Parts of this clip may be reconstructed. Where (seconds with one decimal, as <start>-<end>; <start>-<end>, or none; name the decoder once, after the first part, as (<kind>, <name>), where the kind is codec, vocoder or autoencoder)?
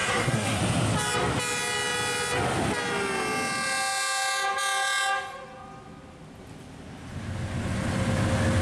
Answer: 0.0-0.6 (codec, SNAC)